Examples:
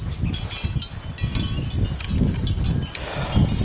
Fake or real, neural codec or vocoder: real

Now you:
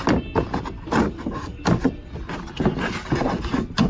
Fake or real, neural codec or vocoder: real